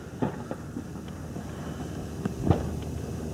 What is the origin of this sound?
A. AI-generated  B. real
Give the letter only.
B